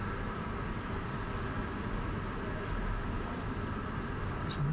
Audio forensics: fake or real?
real